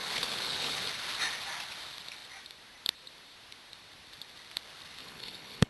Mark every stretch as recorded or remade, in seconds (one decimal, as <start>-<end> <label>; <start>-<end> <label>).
0.0-0.9 remade; 0.9-5.0 recorded; 5.0-5.7 remade

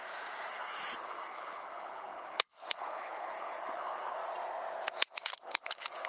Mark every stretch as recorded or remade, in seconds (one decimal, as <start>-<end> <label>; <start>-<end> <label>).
0.0-0.5 recorded; 0.5-4.2 remade; 4.2-5.2 recorded; 5.2-6.1 remade

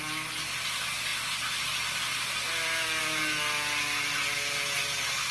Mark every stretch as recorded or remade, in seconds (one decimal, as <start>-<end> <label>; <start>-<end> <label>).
0.0-5.3 recorded

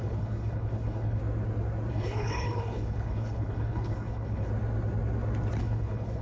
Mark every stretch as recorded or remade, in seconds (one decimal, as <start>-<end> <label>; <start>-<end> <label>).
0.0-1.2 remade; 1.2-1.9 recorded; 1.9-4.5 remade; 4.5-5.6 recorded; 5.6-6.2 remade

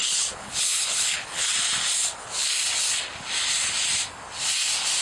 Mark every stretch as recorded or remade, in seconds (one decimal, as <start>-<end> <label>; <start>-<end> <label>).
0.0-1.5 remade; 1.5-2.2 recorded; 2.2-2.6 remade; 2.6-5.0 recorded